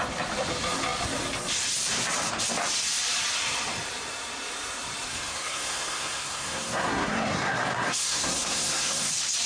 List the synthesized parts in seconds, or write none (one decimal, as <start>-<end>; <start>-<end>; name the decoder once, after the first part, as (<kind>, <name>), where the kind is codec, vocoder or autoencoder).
5.1-9.1 (codec, SNAC)